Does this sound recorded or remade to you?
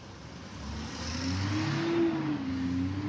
recorded